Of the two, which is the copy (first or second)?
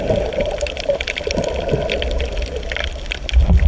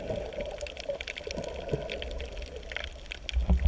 first